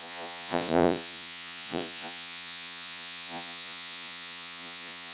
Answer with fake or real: fake